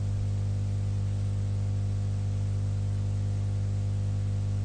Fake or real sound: real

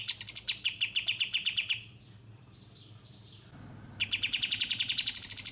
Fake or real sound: real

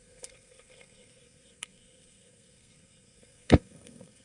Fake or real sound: fake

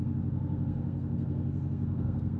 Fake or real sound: fake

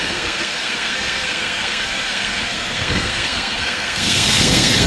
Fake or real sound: fake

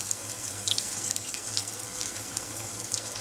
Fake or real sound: fake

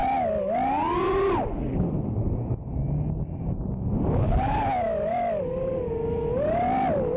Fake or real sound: real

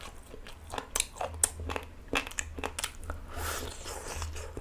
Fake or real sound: real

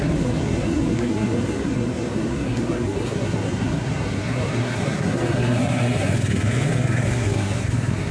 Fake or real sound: fake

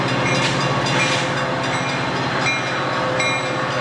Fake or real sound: real